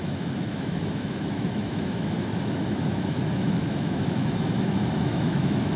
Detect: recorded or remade remade